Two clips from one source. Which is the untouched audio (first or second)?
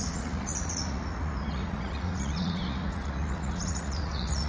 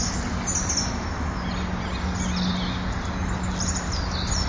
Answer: second